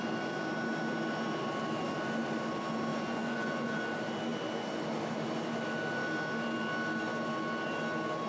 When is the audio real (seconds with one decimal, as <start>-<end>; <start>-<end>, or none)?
0.0-2.9; 3.8-8.3